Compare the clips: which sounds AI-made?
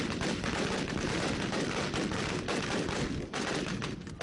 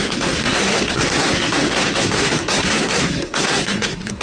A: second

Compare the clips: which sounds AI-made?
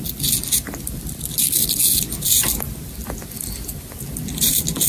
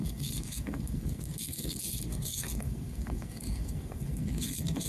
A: second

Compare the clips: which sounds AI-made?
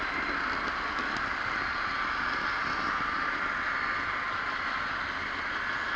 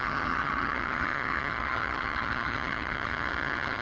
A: second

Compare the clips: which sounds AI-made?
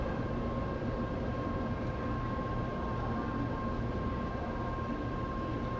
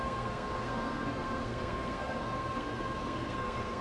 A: second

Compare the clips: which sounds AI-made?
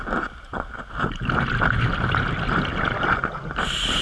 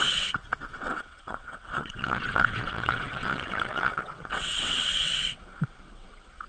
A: second